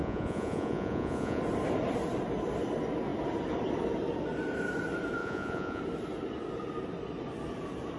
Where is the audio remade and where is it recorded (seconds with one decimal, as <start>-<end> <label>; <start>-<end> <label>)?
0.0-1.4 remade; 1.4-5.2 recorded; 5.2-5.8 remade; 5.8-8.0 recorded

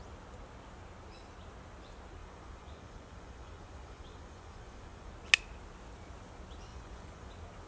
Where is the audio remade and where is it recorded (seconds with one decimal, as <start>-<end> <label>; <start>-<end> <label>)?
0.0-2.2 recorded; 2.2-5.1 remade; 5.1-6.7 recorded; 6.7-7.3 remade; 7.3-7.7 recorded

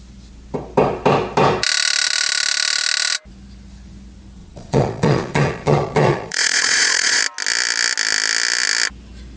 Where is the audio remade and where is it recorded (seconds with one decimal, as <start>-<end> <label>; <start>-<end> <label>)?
0.0-4.4 recorded; 4.4-7.2 remade; 7.2-9.4 recorded

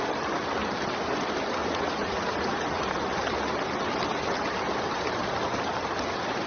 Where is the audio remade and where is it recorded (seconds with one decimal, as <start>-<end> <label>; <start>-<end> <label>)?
0.0-1.6 recorded; 1.6-2.8 remade; 2.8-6.5 recorded